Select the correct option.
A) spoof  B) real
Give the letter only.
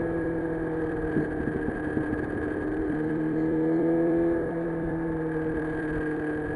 A